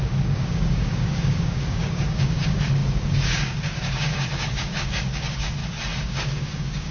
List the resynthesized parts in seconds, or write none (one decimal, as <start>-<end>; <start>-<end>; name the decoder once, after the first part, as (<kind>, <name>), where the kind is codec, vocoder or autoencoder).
0.0-5.6 (codec, DAC); 6.1-6.9